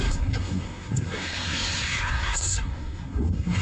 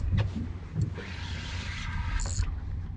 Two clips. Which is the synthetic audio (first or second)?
first